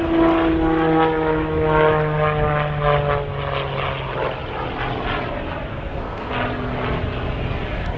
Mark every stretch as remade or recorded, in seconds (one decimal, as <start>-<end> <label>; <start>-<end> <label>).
0.0-5.7 recorded; 5.7-6.3 remade; 6.3-8.0 recorded